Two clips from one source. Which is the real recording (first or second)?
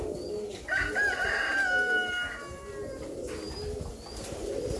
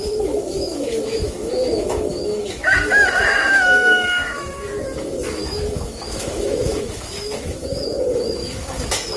first